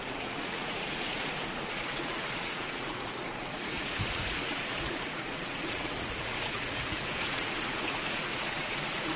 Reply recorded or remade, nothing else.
remade